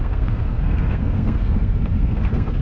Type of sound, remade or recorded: remade